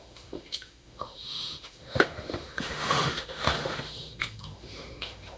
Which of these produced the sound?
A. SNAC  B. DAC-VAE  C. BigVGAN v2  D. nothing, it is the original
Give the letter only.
B